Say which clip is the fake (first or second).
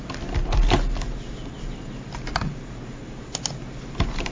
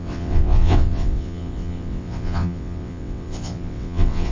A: second